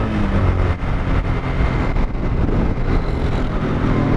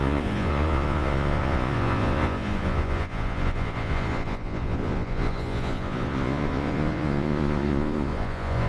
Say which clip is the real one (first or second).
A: first